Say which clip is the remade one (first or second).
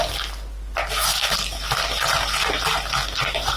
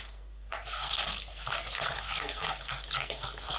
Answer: second